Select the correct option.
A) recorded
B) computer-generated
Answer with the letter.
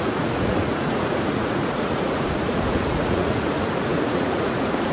B